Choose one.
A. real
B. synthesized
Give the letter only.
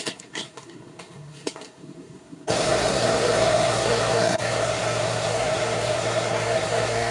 B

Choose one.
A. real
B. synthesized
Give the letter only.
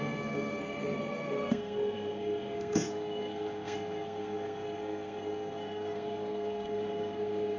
B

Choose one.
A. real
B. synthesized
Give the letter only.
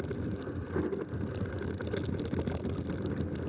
A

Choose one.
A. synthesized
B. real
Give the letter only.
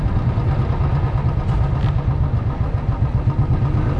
B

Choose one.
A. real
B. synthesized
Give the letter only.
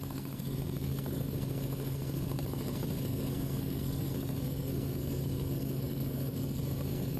B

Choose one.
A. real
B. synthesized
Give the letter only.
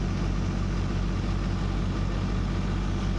A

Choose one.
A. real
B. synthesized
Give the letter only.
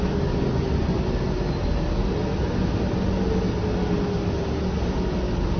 A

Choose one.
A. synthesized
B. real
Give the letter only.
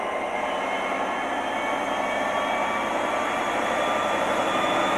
B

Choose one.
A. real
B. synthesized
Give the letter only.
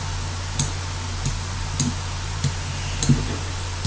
A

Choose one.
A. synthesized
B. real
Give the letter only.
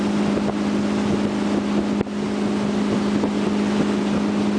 B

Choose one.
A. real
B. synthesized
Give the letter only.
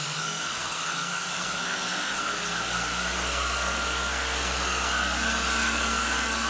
B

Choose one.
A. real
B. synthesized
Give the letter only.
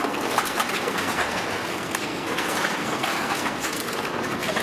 B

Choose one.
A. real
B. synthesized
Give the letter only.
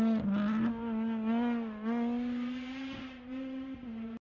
A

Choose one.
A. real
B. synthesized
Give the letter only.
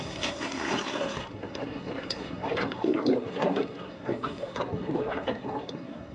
B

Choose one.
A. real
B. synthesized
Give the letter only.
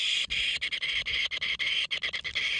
A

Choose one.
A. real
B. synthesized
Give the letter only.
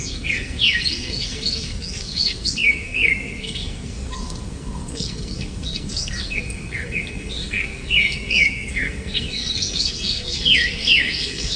B